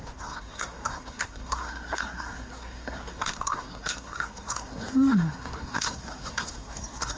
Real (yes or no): no